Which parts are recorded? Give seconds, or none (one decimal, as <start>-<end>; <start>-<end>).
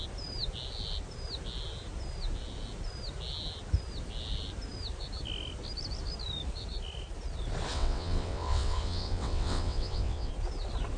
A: 0.0-7.7; 10.3-11.0